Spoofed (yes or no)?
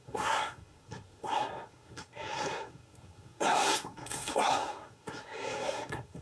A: yes